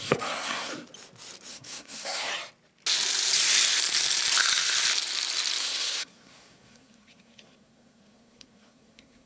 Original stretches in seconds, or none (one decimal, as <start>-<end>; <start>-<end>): 0.7-1.5; 2.3-5.6